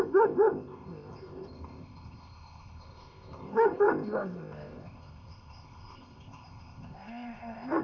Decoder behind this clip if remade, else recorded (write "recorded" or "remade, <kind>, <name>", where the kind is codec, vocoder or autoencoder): remade, codec, ZipCodec